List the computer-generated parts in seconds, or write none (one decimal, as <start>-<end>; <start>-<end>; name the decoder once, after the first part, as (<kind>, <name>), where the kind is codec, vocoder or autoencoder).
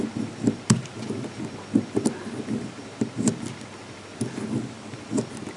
none